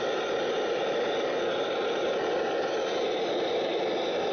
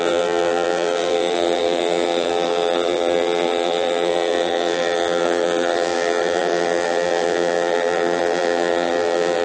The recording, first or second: first